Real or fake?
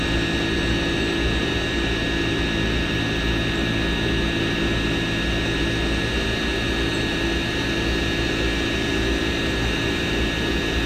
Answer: real